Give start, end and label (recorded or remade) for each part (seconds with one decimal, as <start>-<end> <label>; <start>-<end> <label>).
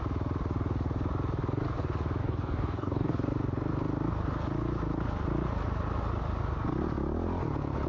0.0-2.2 recorded; 2.2-3.1 remade; 3.1-7.9 recorded